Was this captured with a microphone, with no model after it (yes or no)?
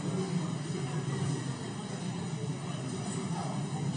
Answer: yes